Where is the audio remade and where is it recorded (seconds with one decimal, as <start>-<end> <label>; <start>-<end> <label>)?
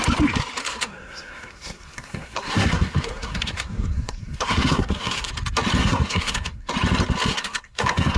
0.0-0.6 recorded; 0.6-5.3 remade; 5.3-5.8 recorded; 5.8-6.7 remade; 6.7-7.3 recorded; 7.3-8.2 remade